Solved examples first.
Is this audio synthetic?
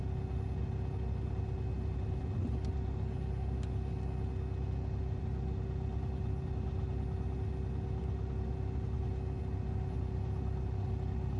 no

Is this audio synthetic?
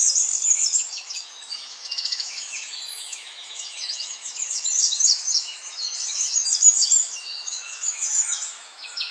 yes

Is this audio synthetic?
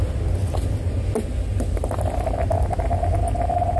no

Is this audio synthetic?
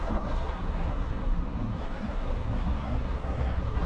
yes